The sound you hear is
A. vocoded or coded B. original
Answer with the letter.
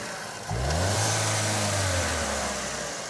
B